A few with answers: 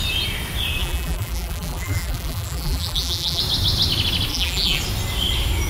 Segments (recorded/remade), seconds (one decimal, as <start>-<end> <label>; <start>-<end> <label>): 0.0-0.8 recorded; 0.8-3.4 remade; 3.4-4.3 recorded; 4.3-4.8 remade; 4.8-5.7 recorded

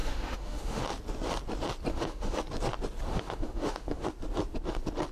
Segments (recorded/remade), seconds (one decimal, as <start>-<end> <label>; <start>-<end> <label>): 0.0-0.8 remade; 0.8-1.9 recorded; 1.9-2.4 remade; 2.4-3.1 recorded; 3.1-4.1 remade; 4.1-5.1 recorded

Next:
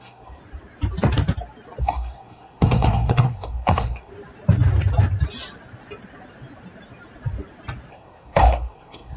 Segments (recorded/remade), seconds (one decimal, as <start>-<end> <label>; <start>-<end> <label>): 0.0-0.4 remade; 0.4-1.8 recorded; 1.8-4.1 remade; 4.1-7.9 recorded; 7.9-9.2 remade

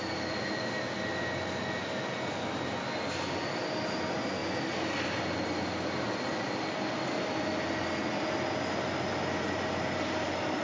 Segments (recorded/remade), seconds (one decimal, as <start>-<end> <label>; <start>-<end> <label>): 0.0-10.6 recorded

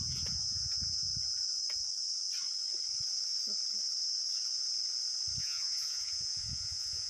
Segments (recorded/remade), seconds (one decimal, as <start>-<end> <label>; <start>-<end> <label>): 0.0-1.1 remade; 1.1-5.4 recorded; 5.4-7.1 remade

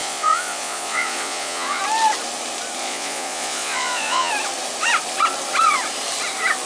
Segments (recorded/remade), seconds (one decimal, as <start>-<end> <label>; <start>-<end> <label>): 0.0-1.8 remade; 1.8-2.8 recorded; 2.8-4.3 remade; 4.3-6.7 recorded